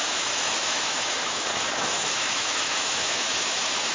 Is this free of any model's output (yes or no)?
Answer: no